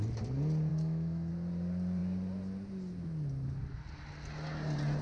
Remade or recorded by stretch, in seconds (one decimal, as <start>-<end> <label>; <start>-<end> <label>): 0.0-0.7 recorded; 0.7-1.3 remade; 1.3-5.0 recorded